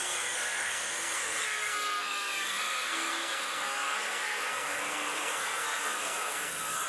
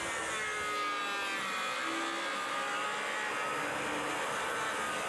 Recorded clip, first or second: second